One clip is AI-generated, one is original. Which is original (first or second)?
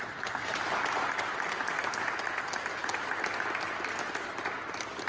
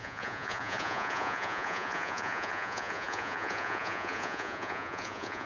first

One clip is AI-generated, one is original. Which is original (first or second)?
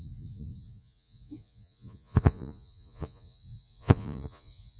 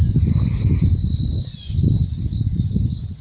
second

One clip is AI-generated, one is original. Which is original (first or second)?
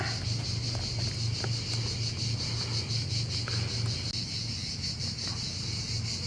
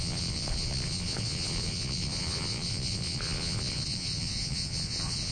first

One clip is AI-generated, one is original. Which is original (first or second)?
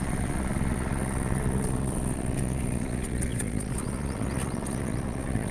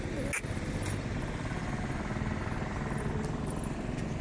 second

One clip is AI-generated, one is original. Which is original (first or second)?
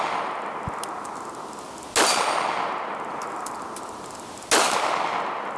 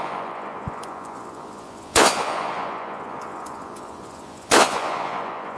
first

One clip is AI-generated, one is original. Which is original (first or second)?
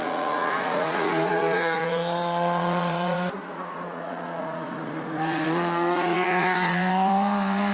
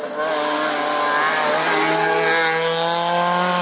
second